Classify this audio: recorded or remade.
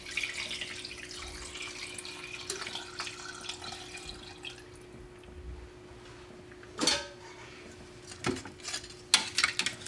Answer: recorded